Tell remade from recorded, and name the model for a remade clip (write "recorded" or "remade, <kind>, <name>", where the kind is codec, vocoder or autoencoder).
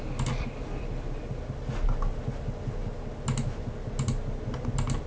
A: recorded